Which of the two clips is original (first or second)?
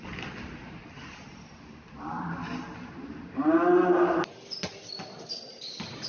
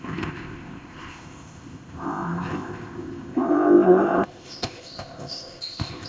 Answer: first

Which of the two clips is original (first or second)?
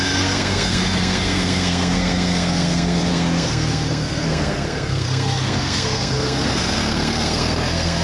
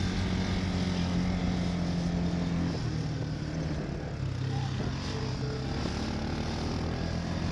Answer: second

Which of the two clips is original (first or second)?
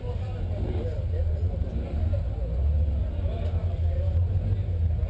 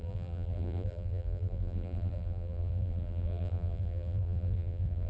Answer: first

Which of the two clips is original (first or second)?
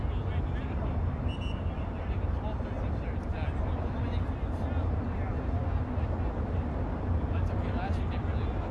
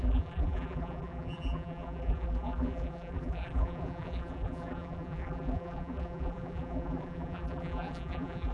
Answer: first